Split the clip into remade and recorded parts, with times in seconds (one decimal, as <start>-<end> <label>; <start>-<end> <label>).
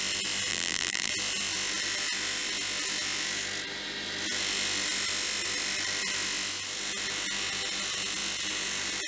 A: 0.0-0.5 recorded; 0.5-1.1 remade; 1.1-9.1 recorded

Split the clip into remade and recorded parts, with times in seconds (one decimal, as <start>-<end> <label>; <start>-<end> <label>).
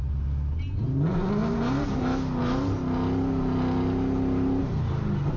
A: 0.0-5.4 recorded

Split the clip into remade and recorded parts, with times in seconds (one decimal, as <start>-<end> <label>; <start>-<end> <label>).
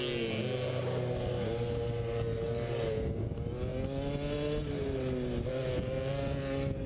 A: 0.0-6.9 recorded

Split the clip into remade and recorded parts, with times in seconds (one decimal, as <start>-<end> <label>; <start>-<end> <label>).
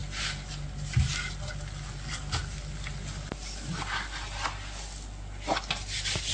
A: 0.0-6.3 recorded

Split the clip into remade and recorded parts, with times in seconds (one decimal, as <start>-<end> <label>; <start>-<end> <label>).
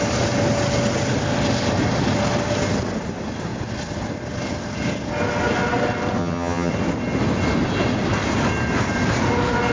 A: 0.0-6.2 recorded; 6.2-6.7 remade; 6.7-9.7 recorded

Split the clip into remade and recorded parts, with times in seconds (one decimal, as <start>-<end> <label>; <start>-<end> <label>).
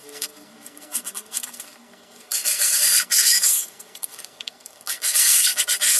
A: 0.0-6.0 remade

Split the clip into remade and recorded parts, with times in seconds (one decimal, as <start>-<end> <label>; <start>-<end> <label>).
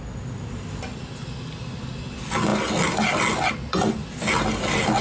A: 0.0-5.0 recorded